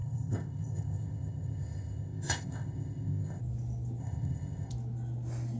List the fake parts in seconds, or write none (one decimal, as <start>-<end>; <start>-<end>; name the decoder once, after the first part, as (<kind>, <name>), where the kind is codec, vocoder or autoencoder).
0.0-3.4 (codec, ZipCodec); 4.0-4.7